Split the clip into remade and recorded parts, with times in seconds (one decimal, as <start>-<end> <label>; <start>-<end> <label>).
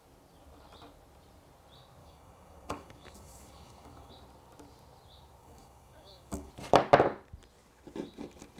0.0-2.0 recorded; 2.0-4.1 remade; 4.1-5.4 recorded; 5.4-6.5 remade; 6.5-8.6 recorded